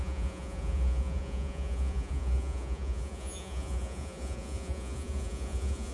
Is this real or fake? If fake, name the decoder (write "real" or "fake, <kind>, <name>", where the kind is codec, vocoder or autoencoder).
fake, vocoder, Vocos